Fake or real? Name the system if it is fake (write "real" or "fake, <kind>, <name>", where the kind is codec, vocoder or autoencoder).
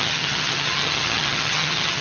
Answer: fake, vocoder, HiFi-GAN